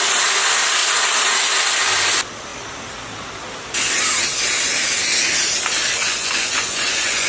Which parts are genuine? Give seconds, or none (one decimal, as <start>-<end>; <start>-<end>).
0.0-6.0